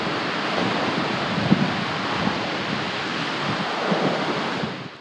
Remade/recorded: recorded